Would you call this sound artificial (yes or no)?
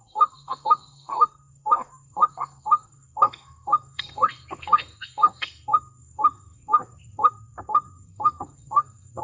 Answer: yes